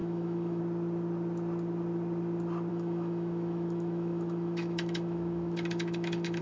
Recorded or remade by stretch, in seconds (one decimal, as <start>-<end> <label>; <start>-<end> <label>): 0.0-0.6 remade; 0.6-2.7 recorded; 2.7-6.4 remade